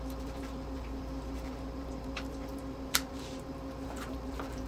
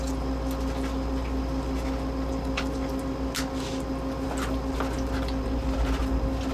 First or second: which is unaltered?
second